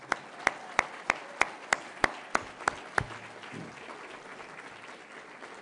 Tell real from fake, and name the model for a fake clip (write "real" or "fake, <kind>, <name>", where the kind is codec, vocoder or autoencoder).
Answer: real